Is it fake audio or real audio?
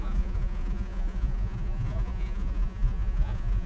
fake